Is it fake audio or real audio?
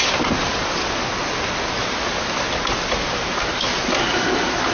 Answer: real